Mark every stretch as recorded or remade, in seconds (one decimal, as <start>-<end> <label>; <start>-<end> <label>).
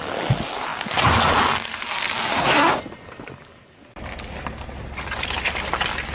0.0-6.1 recorded